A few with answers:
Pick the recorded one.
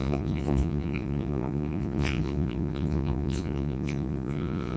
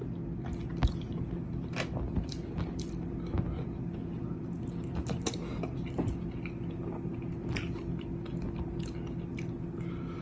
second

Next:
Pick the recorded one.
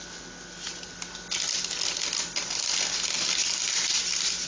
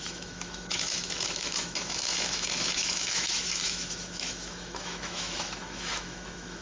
first